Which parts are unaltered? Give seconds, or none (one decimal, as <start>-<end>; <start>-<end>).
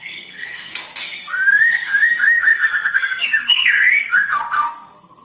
none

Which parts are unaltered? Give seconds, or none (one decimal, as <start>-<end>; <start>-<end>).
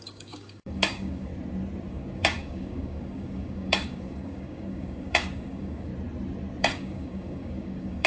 1.3-1.9; 5.9-6.6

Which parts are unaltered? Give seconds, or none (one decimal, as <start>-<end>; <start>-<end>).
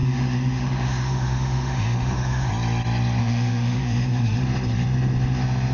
2.5-3.2; 4.4-5.7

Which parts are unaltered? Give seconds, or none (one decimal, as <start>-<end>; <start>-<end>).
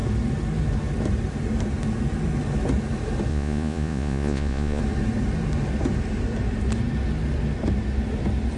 0.0-3.3; 4.8-8.6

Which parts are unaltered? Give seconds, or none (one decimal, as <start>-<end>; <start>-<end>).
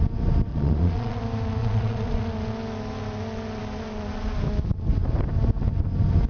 0.0-0.5; 1.2-1.6; 2.2-6.3